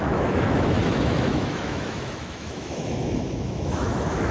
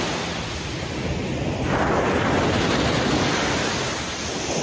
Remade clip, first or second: first